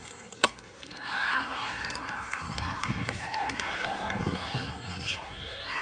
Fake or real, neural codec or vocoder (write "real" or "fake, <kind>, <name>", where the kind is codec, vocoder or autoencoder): fake, codec, SNAC